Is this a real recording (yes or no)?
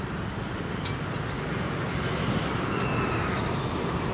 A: yes